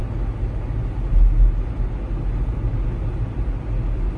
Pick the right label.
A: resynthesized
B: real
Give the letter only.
B